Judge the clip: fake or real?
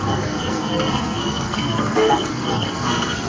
fake